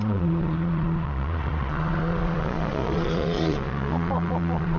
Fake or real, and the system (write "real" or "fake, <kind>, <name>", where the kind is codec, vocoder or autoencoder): fake, vocoder, Vocos